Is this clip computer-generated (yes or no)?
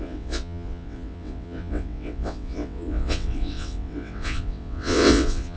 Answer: yes